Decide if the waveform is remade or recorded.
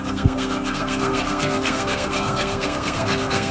remade